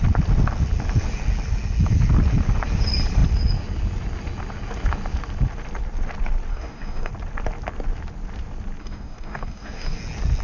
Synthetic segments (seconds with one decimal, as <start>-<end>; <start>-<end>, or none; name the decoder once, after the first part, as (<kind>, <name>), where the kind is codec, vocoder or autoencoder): 6.5-7.1 (codec, DAC); 8.8-10.0

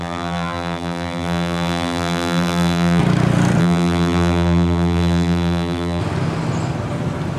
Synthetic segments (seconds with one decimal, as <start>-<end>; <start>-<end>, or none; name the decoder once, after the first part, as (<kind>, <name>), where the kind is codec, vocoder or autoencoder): 0.0-3.0 (vocoder, BigVGAN v2); 3.6-6.0

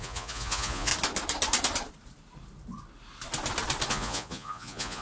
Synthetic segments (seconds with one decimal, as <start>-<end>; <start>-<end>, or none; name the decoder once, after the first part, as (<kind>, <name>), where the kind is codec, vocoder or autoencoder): 0.0-0.9 (vocoder, Vocos); 3.9-5.0

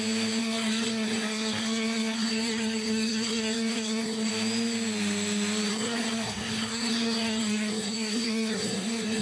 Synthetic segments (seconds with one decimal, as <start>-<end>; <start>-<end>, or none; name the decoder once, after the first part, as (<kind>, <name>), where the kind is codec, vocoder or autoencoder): 0.4-4.3 (codec, SNAC); 5.7-9.2

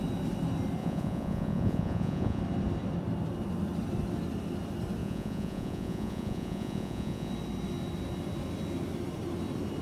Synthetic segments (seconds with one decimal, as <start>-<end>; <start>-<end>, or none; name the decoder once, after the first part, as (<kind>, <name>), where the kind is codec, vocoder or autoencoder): 0.8-2.4 (vocoder, Vocos); 5.0-7.3